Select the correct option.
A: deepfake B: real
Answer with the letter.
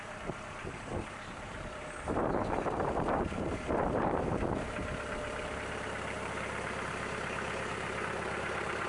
A